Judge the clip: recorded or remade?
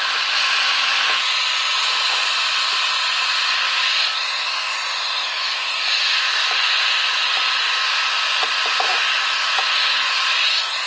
recorded